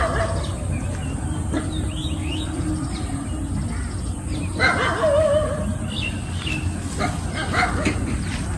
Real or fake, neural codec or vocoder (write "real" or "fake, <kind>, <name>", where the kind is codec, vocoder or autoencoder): real